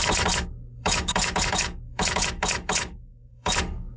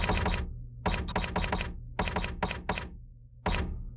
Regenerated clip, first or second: first